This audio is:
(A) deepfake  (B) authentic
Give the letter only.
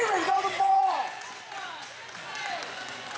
A